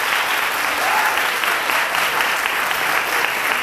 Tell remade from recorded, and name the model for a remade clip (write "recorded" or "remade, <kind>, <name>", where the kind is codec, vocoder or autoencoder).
recorded